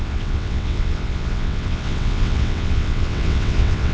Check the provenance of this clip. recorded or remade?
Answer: remade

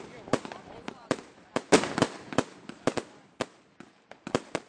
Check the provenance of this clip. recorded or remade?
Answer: recorded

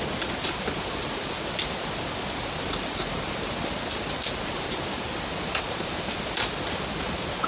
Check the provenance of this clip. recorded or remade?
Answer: recorded